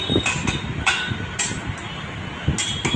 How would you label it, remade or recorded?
recorded